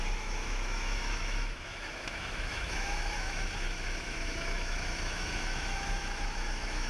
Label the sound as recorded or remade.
remade